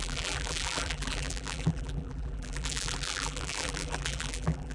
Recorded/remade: remade